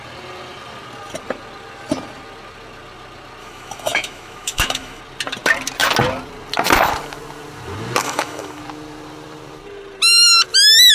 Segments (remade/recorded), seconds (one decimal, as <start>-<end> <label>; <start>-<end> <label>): 0.0-3.4 recorded; 3.4-5.0 remade; 5.0-8.0 recorded; 8.0-8.6 remade; 8.6-10.9 recorded